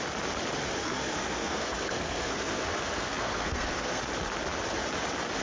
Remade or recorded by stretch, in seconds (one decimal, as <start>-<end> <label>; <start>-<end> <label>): 0.0-0.8 recorded; 0.8-4.0 remade; 4.0-5.4 recorded